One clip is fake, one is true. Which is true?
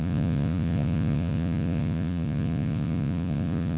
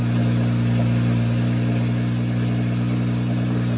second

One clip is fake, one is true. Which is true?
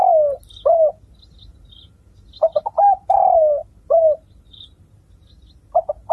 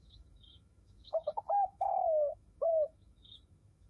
first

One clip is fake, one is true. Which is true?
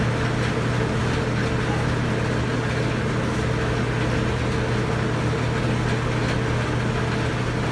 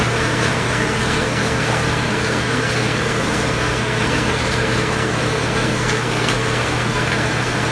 first